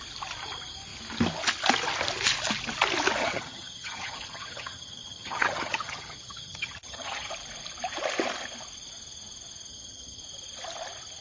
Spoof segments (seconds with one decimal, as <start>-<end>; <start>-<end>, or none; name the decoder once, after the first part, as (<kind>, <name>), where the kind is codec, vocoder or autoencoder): 3.2-7.3 (vocoder, HiFi-GAN); 9.7-10.2